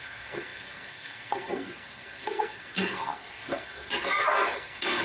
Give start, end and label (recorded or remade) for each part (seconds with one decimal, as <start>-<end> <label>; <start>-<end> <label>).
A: 0.0-5.0 remade